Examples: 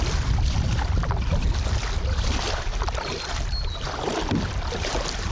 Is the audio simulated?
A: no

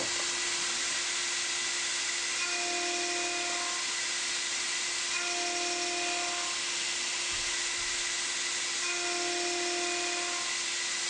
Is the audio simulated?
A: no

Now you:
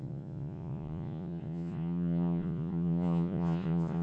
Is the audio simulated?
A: yes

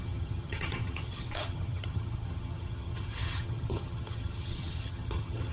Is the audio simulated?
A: yes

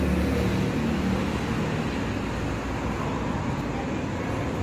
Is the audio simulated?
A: no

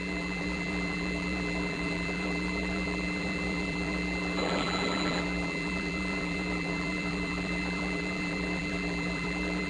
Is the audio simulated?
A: yes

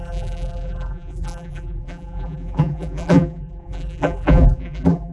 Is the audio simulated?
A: yes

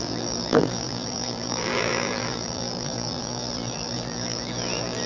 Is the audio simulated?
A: yes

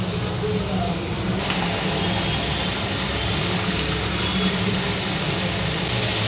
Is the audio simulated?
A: no